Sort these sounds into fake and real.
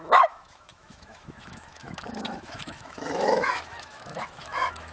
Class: fake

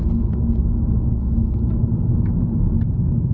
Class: real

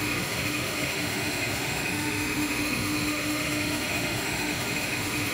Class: fake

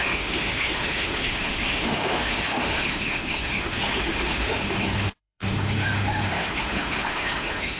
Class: fake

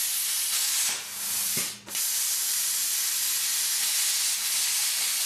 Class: real